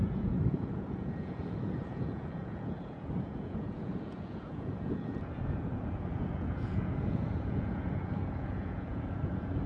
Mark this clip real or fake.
fake